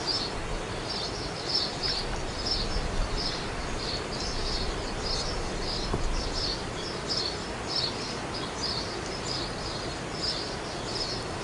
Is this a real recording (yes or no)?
yes